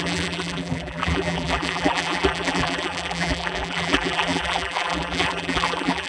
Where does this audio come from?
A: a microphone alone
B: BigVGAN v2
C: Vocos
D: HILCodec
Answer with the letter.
B